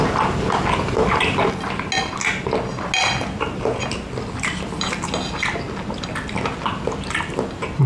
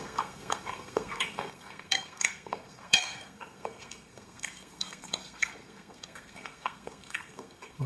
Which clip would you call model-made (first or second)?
second